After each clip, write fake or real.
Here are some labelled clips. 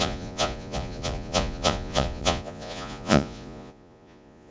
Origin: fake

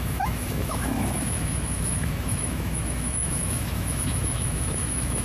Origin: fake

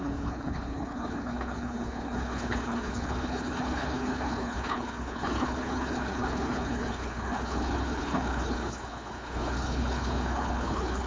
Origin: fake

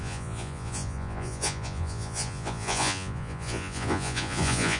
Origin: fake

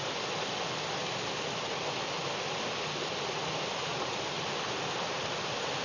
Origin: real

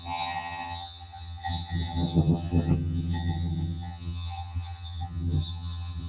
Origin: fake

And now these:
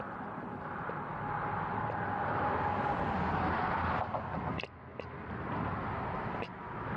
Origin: real